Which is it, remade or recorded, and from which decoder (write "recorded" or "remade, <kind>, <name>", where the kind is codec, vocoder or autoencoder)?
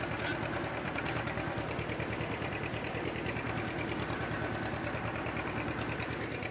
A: remade, vocoder, BigVGAN v2